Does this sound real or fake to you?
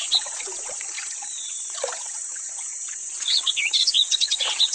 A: fake